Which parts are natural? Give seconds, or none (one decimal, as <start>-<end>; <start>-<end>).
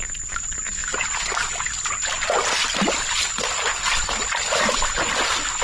0.0-5.6